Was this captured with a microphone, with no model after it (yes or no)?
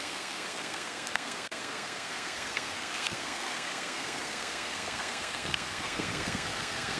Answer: no